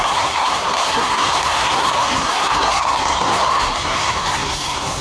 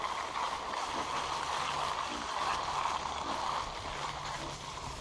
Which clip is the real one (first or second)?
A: second